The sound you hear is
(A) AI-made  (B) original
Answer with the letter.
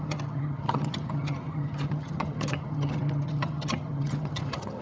A